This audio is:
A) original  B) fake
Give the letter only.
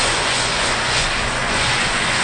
B